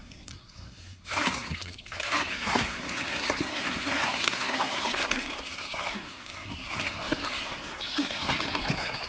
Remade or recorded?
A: remade